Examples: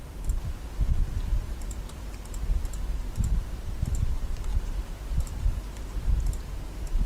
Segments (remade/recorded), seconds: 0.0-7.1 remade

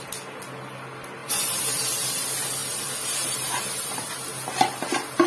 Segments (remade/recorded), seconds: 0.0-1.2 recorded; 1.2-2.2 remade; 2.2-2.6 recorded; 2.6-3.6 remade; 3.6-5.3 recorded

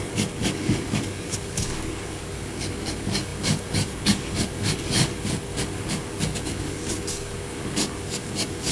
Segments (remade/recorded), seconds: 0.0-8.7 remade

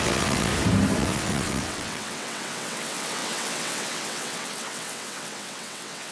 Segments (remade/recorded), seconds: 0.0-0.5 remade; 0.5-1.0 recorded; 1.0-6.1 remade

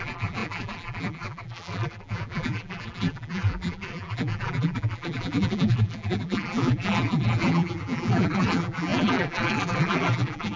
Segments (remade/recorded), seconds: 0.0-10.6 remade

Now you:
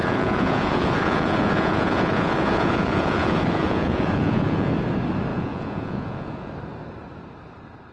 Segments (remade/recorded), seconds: 0.0-4.7 remade; 4.7-5.3 recorded; 5.3-6.5 remade; 6.5-7.9 recorded